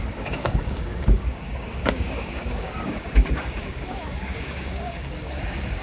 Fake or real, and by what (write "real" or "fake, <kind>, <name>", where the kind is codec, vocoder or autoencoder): fake, codec, DAC